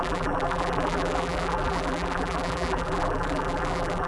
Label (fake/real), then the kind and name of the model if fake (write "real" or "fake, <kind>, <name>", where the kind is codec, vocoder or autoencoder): fake, vocoder, BigVGAN v2